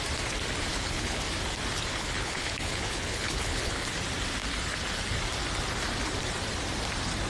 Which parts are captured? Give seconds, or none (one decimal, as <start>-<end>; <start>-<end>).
0.0-0.7; 1.2-1.9; 3.8-7.3